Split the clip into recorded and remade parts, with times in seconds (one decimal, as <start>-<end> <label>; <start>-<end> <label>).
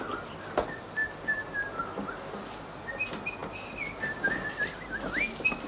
0.0-1.0 recorded; 1.0-1.8 remade; 1.8-5.7 recorded